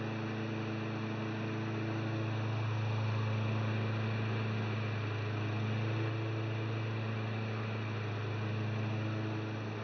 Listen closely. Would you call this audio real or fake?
real